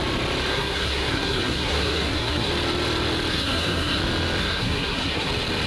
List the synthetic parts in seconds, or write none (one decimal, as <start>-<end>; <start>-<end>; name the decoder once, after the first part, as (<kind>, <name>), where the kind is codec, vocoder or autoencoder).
0.5-2.5 (codec, SNAC); 3.3-4.0; 4.4-5.3